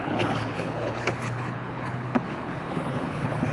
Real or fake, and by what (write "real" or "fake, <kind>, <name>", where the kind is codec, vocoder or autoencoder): fake, codec, HILCodec